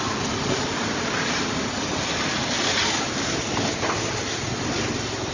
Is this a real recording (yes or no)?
yes